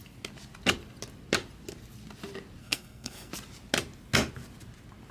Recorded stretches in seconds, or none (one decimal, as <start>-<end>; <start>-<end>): 0.0-2.6; 3.3-5.1